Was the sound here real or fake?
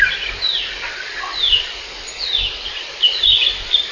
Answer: real